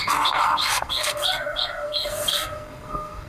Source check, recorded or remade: remade